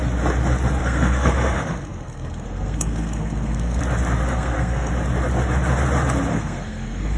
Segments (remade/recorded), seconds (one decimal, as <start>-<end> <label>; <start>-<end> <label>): 0.0-0.8 recorded; 0.8-3.8 remade; 3.8-4.3 recorded; 4.3-4.9 remade; 4.9-6.3 recorded; 6.3-7.2 remade